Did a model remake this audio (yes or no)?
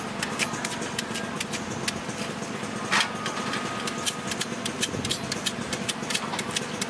no